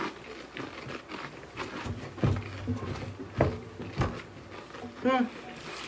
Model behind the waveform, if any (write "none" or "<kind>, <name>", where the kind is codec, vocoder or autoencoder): none